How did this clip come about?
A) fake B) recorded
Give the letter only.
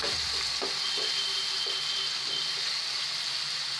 B